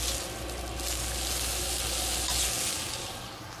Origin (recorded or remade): recorded